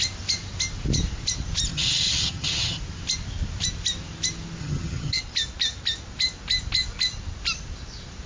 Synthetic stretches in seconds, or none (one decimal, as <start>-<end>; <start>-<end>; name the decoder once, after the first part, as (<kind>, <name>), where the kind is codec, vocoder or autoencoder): 1.7-2.8 (vocoder, HiFi-GAN); 4.6-5.2